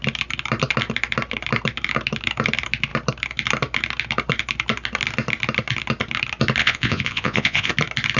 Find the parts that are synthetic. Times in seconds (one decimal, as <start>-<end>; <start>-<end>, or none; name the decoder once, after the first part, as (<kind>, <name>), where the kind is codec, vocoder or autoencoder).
6.6-7.7 (vocoder, Vocos)